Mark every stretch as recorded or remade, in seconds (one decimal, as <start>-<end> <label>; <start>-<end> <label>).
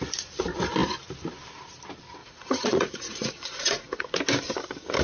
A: 0.0-2.2 recorded; 2.2-4.0 remade; 4.0-5.0 recorded